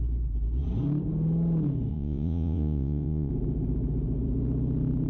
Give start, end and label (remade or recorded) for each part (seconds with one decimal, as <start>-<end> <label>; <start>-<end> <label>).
0.0-1.9 recorded; 1.9-3.3 remade; 3.3-5.1 recorded